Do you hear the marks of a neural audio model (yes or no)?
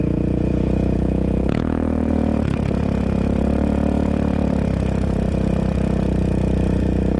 yes